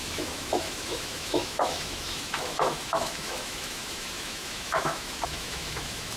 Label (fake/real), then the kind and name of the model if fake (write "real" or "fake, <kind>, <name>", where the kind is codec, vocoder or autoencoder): fake, autoencoder, DAC-VAE